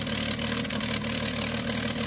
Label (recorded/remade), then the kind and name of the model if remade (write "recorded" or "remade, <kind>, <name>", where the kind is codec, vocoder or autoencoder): recorded